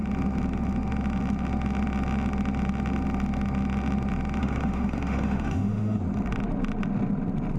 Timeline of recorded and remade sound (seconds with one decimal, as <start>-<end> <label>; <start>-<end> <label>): 0.0-4.4 recorded; 4.4-6.0 remade; 6.0-7.6 recorded